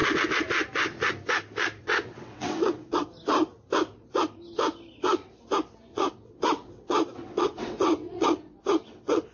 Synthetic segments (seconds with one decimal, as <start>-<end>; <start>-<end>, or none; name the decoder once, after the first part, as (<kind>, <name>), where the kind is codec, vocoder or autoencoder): 1.8-3.1 (vocoder, WaveNeXt); 5.9-9.3